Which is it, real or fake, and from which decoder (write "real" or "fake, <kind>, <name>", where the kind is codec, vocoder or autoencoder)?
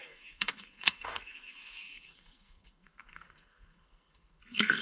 fake, codec, SNAC